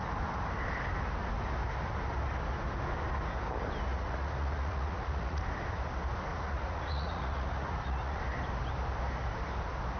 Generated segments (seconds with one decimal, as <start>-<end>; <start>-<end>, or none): 3.9-5.4; 6.3-8.2